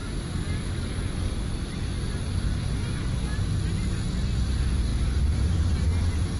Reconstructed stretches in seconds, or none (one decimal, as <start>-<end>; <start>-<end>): 4.9-5.7